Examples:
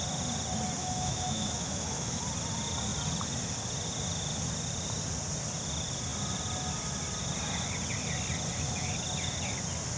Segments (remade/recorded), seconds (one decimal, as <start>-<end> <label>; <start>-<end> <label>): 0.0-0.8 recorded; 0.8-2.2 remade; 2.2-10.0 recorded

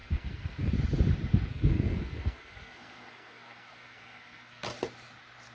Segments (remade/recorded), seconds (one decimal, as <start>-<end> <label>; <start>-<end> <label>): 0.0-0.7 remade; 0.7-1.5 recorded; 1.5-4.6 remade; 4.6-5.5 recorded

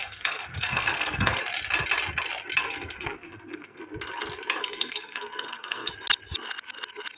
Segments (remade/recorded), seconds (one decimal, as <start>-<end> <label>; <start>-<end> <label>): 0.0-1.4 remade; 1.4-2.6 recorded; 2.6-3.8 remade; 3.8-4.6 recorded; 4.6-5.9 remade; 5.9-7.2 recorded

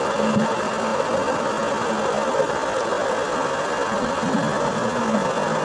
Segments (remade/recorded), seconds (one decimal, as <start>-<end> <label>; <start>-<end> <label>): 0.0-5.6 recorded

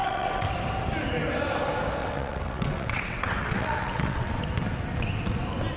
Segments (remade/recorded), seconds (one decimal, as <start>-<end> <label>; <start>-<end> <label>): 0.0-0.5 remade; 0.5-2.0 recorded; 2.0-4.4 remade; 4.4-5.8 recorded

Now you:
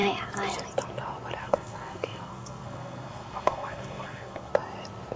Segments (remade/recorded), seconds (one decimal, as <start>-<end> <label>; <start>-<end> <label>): 0.0-1.4 recorded; 1.4-4.5 remade; 4.5-5.2 recorded

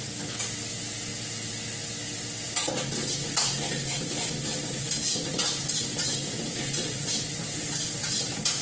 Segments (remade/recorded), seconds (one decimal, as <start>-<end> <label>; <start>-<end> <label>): 0.0-8.6 recorded

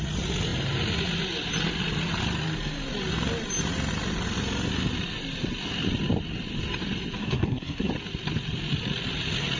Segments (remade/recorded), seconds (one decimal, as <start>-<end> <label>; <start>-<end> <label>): 0.0-7.2 recorded; 7.2-7.9 remade; 7.9-9.6 recorded